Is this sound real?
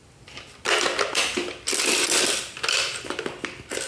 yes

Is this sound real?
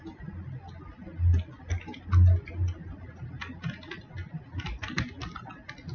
yes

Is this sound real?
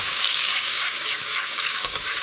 no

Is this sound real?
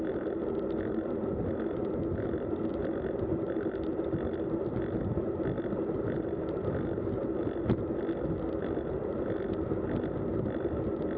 yes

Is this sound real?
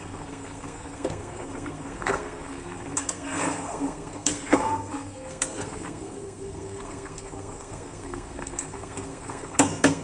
no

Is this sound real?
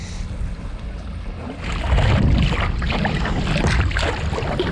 yes